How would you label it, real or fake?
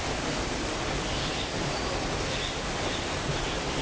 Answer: real